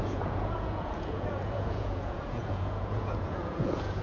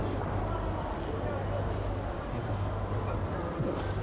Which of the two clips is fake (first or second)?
first